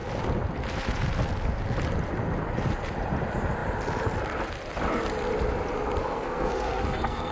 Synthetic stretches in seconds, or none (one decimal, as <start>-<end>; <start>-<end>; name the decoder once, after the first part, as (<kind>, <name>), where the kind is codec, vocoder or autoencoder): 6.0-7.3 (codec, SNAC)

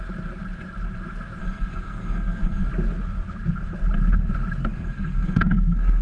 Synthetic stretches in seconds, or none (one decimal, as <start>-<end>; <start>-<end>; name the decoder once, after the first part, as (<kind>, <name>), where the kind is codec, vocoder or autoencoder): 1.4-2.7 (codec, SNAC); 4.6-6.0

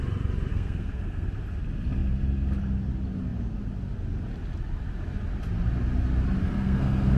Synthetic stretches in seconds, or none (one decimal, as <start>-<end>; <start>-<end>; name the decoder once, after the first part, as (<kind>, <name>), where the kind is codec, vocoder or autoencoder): 0.5-1.3 (codec, SNAC); 6.4-7.2